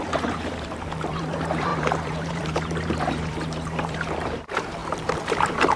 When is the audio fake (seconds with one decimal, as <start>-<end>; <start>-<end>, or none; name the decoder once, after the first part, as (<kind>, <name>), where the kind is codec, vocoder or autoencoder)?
0.0-4.8 (vocoder, BigVGAN v2); 5.3-5.8

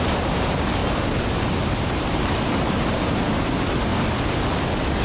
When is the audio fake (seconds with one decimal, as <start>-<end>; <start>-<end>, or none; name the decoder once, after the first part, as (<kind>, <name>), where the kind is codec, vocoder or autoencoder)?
0.0-0.8 (vocoder, BigVGAN v2); 1.4-3.9

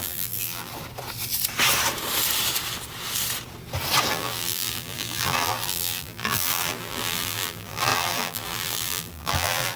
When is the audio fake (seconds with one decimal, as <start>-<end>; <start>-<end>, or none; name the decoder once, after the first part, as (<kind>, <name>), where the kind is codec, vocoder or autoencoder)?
0.0-0.7 (vocoder, BigVGAN v2); 4.1-9.8

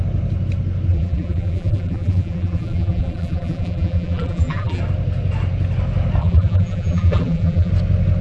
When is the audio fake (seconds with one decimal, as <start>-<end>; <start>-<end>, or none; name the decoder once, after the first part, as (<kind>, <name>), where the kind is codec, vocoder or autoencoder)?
0.9-4.8 (vocoder, BigVGAN v2); 6.2-7.7

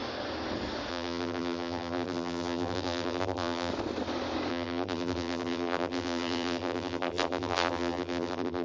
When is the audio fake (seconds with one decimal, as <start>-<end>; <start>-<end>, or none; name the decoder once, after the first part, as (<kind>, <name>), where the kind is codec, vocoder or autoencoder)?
0.9-3.7 (vocoder, BigVGAN v2); 4.5-8.6